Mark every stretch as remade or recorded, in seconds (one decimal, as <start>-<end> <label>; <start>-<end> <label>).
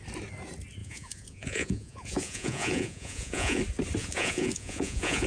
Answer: 0.0-0.8 recorded; 0.8-3.6 remade; 3.6-4.0 recorded; 4.0-5.3 remade